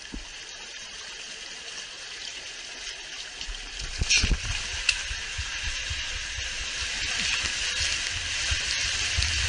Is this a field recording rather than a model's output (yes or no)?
yes